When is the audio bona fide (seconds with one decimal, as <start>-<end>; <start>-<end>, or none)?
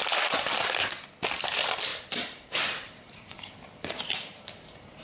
0.0-1.9